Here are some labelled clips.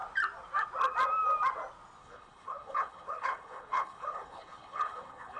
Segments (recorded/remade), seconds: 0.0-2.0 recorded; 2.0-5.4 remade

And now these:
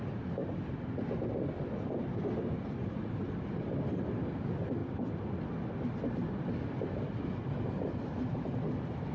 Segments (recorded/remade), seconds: 0.0-9.1 recorded

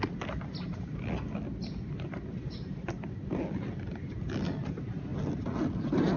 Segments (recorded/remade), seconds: 0.0-6.2 recorded

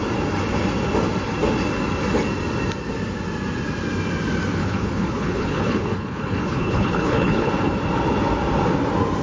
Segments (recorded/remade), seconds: 0.0-4.6 recorded; 4.6-7.5 remade; 7.5-9.2 recorded

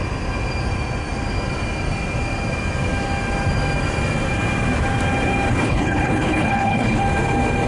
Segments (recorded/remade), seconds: 0.0-5.5 recorded; 5.5-7.0 remade; 7.0-7.7 recorded

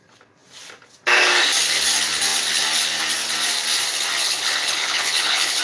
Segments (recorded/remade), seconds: 0.0-4.2 recorded; 4.2-5.6 remade

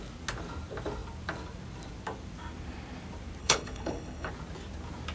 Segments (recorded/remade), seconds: 0.0-3.4 recorded; 3.4-4.3 remade; 4.3-5.1 recorded